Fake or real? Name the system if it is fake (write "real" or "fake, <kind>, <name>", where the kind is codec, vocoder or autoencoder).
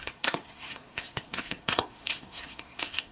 fake, codec, SNAC